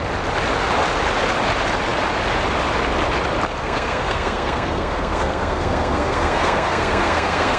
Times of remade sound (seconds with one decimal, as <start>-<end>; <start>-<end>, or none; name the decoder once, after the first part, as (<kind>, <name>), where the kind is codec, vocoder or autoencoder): 3.6-7.6 (codec, SNAC)